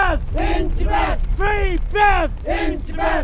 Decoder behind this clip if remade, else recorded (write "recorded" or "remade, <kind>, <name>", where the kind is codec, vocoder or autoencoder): recorded